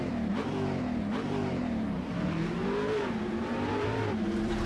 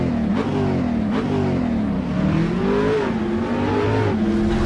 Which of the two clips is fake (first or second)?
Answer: first